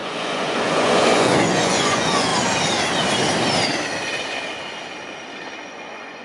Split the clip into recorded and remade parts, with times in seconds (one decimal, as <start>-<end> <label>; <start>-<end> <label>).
0.0-2.3 remade; 2.3-5.6 recorded; 5.6-6.2 remade